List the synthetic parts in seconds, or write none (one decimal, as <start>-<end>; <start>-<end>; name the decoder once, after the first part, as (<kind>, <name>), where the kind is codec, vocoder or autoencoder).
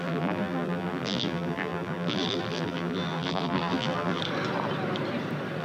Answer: 0.0-4.2 (vocoder, BigVGAN v2)